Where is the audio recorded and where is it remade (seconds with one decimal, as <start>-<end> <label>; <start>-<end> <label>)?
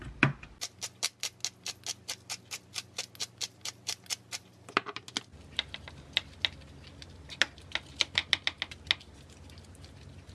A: 0.0-5.3 recorded; 5.3-5.9 remade; 5.9-10.3 recorded